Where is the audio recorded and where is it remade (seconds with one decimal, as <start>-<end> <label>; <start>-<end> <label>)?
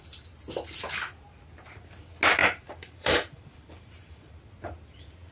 0.0-2.4 recorded; 2.4-4.4 remade; 4.4-5.3 recorded